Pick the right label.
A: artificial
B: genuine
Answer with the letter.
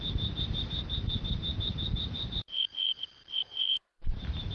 A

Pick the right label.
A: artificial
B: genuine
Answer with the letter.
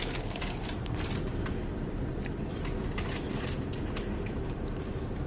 A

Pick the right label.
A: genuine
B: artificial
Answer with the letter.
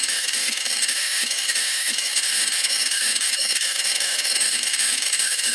B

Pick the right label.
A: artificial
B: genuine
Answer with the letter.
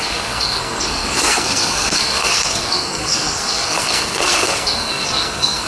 A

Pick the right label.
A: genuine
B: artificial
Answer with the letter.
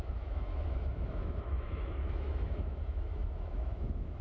B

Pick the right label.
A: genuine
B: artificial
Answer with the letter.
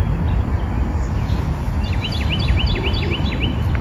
A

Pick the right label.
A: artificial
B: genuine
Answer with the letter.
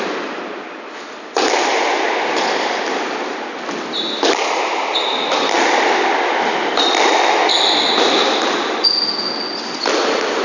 B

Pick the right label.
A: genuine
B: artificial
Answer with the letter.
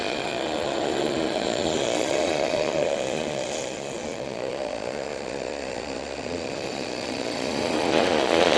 B